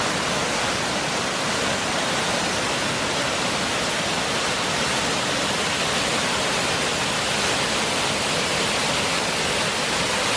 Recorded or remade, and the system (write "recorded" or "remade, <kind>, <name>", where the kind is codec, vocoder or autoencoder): recorded